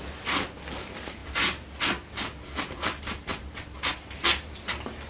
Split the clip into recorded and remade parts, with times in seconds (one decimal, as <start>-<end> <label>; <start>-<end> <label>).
0.0-3.9 recorded; 3.9-5.1 remade